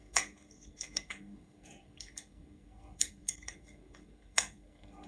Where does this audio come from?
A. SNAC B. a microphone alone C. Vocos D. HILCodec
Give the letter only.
A